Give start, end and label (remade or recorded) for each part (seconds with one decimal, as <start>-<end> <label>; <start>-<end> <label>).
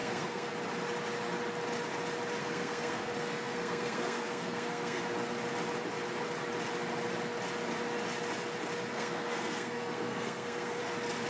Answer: 0.0-0.5 remade; 0.5-2.4 recorded; 2.4-5.0 remade; 5.0-8.9 recorded; 8.9-10.8 remade; 10.8-11.3 recorded